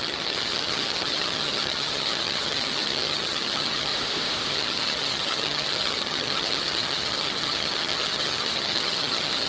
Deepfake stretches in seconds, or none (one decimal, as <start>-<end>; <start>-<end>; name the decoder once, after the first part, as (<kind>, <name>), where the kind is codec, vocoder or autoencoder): 0.0-3.9 (vocoder, HiFi-GAN); 4.5-9.5